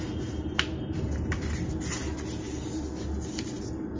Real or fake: real